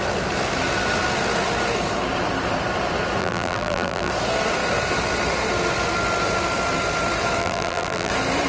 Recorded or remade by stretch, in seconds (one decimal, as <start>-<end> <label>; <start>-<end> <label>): 0.0-3.2 recorded; 3.2-4.1 remade; 4.1-7.4 recorded; 7.4-8.1 remade; 8.1-8.5 recorded